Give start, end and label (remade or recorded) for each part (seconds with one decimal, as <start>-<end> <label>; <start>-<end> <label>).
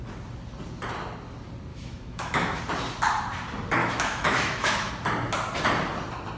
0.0-1.7 recorded; 1.7-2.6 remade; 2.6-3.8 recorded; 3.8-4.9 remade; 4.9-6.4 recorded